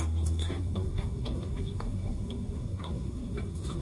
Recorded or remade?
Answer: remade